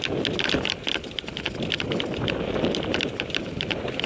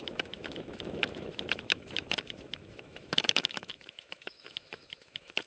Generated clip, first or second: second